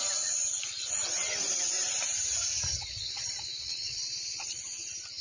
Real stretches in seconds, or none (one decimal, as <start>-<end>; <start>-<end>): 0.0-2.7; 4.6-5.2